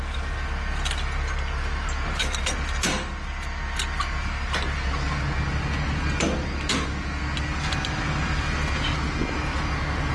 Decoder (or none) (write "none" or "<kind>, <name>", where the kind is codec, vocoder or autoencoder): none